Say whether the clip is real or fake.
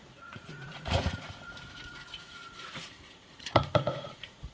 fake